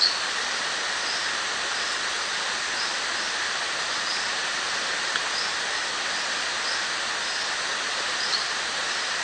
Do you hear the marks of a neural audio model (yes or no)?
no